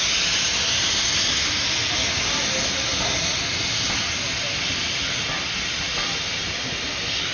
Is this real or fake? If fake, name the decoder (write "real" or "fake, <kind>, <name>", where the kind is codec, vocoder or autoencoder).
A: real